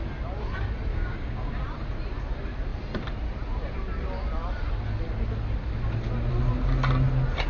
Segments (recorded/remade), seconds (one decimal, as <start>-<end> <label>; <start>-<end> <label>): 0.0-0.9 recorded; 0.9-1.5 remade; 1.5-7.5 recorded